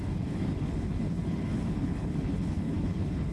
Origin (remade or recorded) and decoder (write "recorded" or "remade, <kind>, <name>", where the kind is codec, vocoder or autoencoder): remade, codec, HILCodec